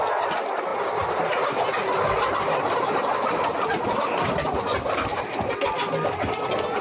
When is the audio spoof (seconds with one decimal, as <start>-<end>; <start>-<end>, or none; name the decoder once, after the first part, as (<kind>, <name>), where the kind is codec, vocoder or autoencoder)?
none